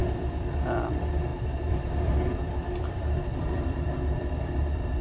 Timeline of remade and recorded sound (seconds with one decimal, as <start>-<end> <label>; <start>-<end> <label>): 0.0-5.0 remade